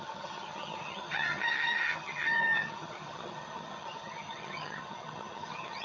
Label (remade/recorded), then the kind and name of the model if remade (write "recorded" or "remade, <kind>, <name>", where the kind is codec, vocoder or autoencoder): remade, vocoder, HiFi-GAN